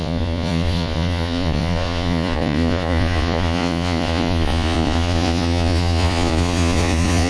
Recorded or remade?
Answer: remade